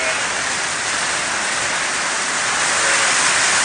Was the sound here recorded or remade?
recorded